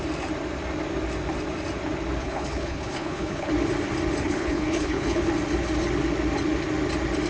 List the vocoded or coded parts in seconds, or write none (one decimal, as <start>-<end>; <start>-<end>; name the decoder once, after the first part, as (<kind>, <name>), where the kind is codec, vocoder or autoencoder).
2.2-3.5 (codec, HILCodec); 4.2-5.2